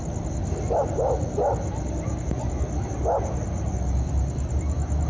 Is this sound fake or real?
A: real